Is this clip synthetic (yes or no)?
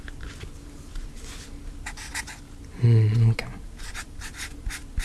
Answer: no